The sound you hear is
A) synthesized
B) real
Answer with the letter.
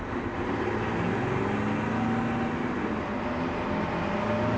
B